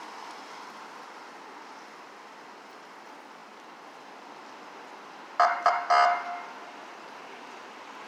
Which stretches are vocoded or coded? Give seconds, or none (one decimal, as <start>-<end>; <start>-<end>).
none